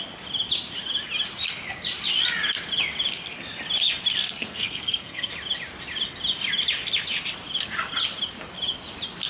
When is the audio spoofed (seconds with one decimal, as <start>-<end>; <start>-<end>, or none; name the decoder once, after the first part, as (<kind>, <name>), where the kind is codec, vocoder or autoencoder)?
4.2-5.3 (codec, SNAC)